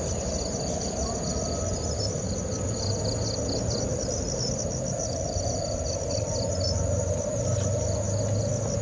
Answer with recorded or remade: recorded